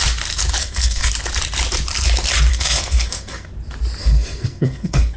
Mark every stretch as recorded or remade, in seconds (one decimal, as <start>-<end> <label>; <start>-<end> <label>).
0.0-0.6 recorded; 0.6-1.1 remade; 1.1-2.5 recorded; 2.5-3.5 remade; 3.5-4.0 recorded; 4.0-5.2 remade